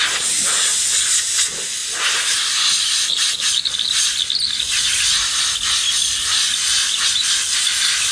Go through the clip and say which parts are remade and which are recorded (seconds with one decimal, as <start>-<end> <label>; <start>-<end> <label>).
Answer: 0.0-8.1 recorded